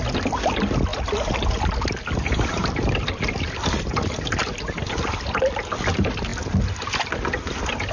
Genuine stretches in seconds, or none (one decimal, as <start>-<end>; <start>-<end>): 0.0-7.9